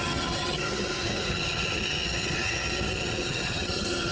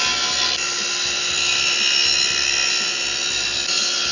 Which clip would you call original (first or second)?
second